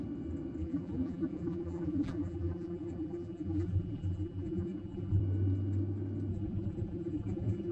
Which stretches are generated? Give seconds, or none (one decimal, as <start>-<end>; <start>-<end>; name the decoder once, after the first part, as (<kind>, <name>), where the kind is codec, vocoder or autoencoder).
0.6-5.2 (vocoder, BigVGAN v2); 6.3-7.7